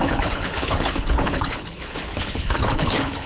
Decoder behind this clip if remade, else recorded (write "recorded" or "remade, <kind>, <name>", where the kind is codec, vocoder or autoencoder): remade, codec, HILCodec